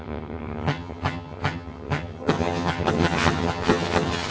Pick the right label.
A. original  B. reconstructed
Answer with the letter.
B